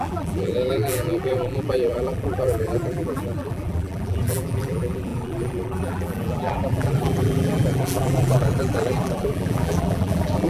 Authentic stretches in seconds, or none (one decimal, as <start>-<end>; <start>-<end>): none